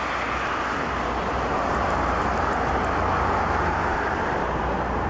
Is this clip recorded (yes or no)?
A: yes